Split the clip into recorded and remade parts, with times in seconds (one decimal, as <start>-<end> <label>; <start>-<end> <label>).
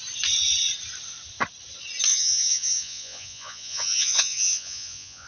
0.0-2.1 recorded; 2.1-5.3 remade